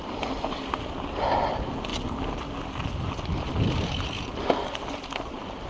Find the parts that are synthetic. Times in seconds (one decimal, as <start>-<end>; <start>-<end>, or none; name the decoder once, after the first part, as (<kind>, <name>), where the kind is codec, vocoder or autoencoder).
none